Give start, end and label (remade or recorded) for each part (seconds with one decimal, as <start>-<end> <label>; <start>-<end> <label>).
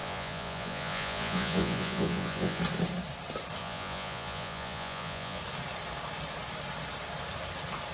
0.0-2.6 remade; 2.6-3.6 recorded; 3.6-5.4 remade; 5.4-7.9 recorded